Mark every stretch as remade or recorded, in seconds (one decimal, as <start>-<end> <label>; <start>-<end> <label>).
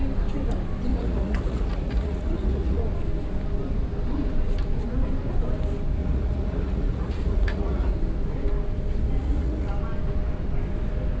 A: 0.0-0.9 recorded; 0.9-2.8 remade; 2.8-6.0 recorded; 6.0-7.9 remade; 7.9-9.2 recorded; 9.2-9.7 remade; 9.7-11.2 recorded